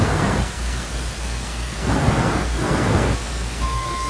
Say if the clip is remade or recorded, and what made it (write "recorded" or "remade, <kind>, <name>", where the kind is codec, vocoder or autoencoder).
remade, codec, SNAC